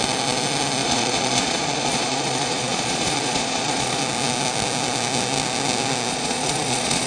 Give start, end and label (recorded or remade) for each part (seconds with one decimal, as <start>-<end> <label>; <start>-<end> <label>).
0.0-0.8 recorded; 0.8-4.0 remade; 4.0-6.1 recorded; 6.1-7.1 remade